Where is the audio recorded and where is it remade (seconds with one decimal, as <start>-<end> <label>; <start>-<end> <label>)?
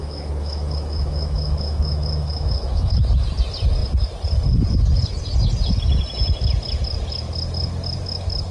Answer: 0.0-2.9 remade; 2.9-8.5 recorded